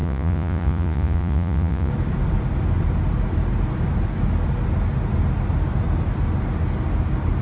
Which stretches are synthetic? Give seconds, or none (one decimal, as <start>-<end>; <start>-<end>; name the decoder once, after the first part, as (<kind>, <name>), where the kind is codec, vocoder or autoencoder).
0.0-1.9 (vocoder, Vocos)